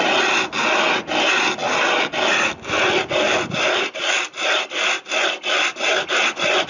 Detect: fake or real real